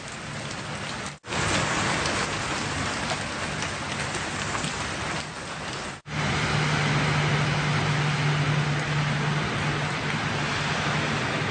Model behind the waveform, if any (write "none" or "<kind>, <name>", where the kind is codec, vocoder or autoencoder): none